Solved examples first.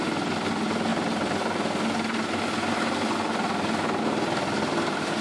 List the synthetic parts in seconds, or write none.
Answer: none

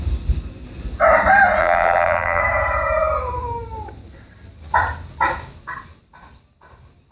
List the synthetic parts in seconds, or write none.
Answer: 1.6-2.4 (vocoder, BigVGAN v2)

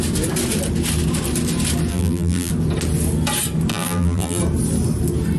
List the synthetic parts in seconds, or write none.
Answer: 1.9-2.5 (vocoder, BigVGAN v2); 3.7-4.4

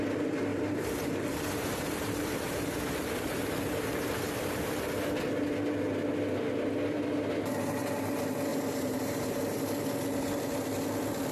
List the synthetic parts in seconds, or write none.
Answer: 0.5-4.9 (vocoder, BigVGAN v2); 8.5-9.4

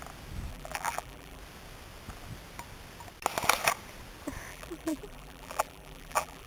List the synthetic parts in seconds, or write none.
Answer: 0.5-1.4 (vocoder, BigVGAN v2); 4.5-6.5

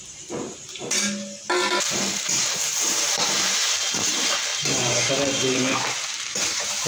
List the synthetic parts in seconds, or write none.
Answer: 0.0-0.8 (vocoder, BigVGAN v2); 1.9-6.9

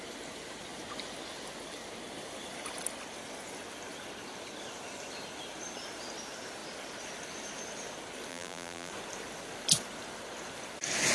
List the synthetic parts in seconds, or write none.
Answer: 8.3-8.9 (vocoder, BigVGAN v2)